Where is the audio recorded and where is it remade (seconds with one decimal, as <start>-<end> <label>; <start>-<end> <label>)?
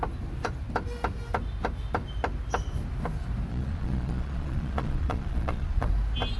0.0-3.5 recorded; 3.5-5.9 remade; 5.9-6.4 recorded